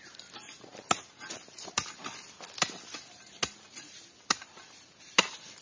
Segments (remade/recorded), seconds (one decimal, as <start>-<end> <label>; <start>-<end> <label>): 0.0-5.6 recorded